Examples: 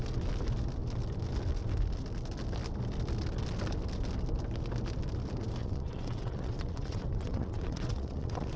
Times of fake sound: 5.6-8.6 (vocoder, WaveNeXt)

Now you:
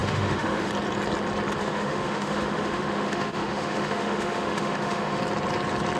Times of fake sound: 0.0-0.7 (autoencoder, DAC-VAE); 1.6-5.2

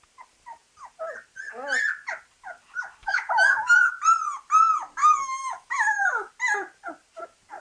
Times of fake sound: 3.0-3.9 (autoencoder, DAC-VAE); 5.0-6.3

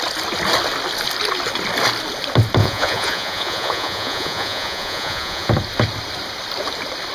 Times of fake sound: 2.6-5.5 (vocoder, Vocos)

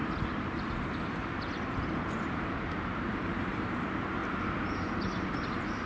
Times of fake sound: 2.3-4.2 (vocoder, BigVGAN v2); 5.5-5.9

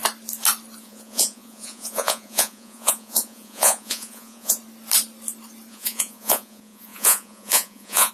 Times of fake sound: 0.8-4.6 (vocoder, Vocos); 5.7-8.1

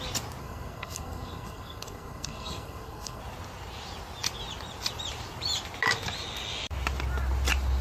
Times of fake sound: 0.4-3.2 (codec, SNAC)